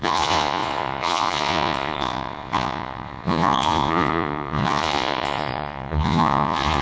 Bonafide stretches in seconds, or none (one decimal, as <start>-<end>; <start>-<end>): none